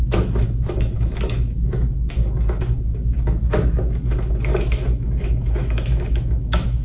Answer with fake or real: fake